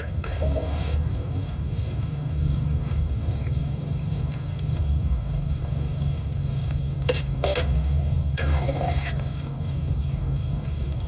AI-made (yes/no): yes